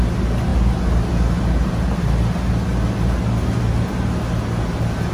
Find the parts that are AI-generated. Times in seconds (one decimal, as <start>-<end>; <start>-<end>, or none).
none